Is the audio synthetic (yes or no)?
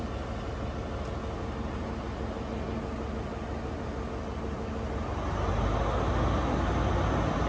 no